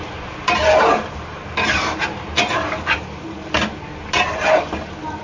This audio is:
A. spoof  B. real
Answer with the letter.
B